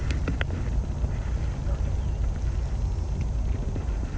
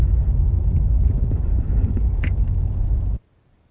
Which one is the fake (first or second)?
second